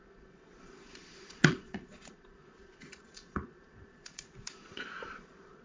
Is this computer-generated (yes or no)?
yes